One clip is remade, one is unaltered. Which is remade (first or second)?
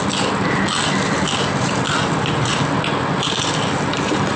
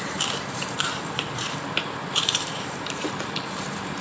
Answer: second